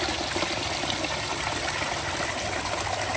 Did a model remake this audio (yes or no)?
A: no